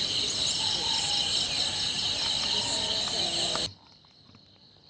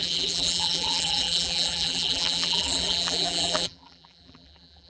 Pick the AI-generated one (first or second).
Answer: second